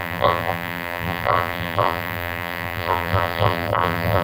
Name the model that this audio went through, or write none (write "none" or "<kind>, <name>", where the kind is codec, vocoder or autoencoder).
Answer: vocoder, BigVGAN v2